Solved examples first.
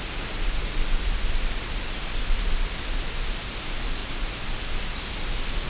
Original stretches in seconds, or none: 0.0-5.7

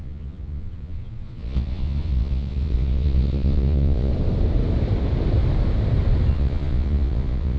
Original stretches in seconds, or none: 4.1-6.3

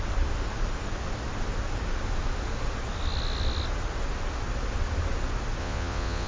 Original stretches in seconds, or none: 0.0-5.6

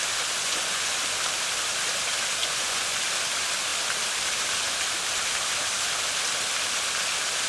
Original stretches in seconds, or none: 0.0-0.4; 1.0-2.4; 3.0-7.5

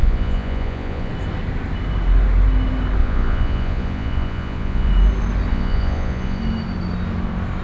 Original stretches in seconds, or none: 1.1-3.0; 4.9-5.5; 6.4-7.6

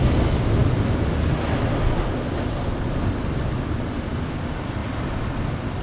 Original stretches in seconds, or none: 0.0-5.8

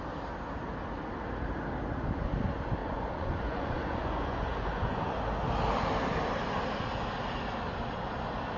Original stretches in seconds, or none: 0.0-2.8; 5.2-8.6